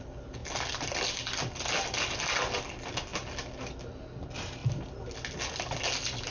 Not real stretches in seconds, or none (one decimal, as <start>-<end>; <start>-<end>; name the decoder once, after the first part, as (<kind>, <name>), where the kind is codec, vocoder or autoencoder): none

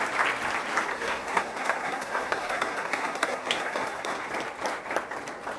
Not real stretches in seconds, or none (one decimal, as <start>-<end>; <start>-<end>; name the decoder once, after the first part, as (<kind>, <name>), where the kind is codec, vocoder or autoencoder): 0.9-4.3 (codec, SNAC)

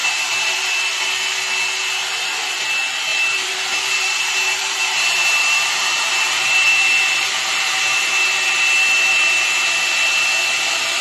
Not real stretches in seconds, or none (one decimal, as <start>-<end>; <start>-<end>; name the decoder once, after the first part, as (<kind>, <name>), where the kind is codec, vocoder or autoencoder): 0.0-0.7 (vocoder, BigVGAN v2); 3.1-8.1

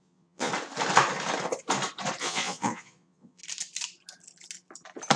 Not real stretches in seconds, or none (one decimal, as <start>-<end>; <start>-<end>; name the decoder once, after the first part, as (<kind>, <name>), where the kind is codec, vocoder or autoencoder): 0.0-0.5 (vocoder, Vocos); 2.2-3.4

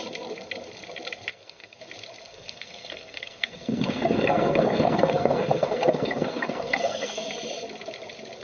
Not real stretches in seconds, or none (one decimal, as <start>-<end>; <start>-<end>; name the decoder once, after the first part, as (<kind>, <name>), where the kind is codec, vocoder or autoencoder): 1.3-1.8 (codec, SNAC); 2.3-7.3